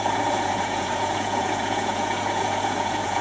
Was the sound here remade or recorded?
remade